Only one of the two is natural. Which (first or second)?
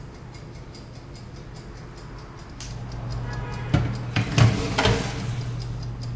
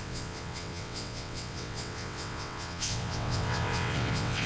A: first